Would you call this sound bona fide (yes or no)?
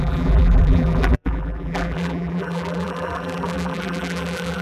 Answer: no